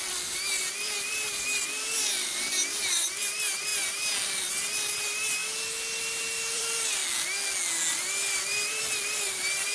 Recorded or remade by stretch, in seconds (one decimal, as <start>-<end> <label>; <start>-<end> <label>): 0.0-5.4 remade; 5.4-6.0 recorded; 6.0-7.0 remade; 7.0-7.9 recorded; 7.9-9.7 remade